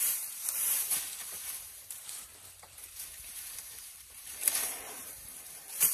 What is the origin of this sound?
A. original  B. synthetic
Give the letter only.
B